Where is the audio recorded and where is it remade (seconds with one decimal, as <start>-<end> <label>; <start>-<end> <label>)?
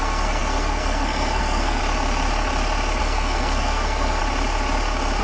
0.0-1.8 remade; 1.8-3.0 recorded; 3.0-4.2 remade; 4.2-5.2 recorded